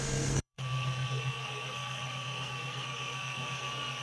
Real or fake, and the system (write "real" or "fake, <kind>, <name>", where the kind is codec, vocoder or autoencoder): fake, codec, SNAC